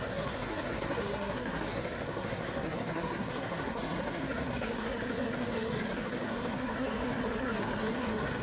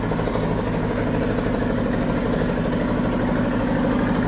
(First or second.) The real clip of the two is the second